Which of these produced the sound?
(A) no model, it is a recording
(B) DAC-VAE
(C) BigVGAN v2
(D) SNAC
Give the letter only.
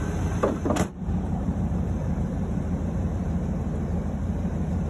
C